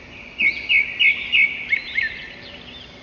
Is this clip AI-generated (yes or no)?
no